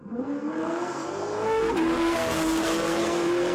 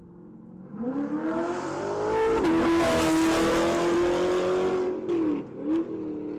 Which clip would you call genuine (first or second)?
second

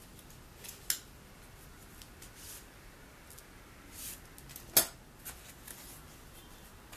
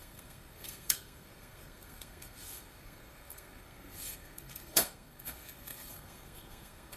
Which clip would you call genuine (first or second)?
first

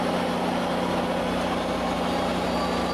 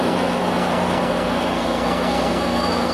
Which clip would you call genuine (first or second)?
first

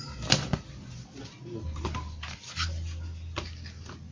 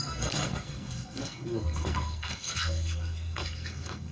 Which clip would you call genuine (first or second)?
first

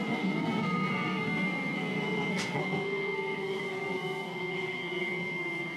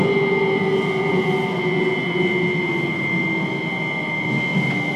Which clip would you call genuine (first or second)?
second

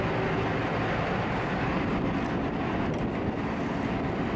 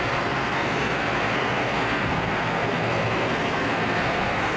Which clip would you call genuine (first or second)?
first